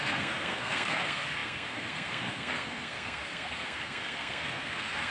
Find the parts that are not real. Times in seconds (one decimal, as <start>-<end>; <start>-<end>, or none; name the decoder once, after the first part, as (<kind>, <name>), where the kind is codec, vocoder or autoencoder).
0.0-5.1 (codec, SNAC)